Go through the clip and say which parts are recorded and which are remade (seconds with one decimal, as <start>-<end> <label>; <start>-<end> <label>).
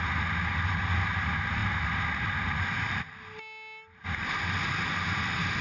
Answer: 0.0-5.6 recorded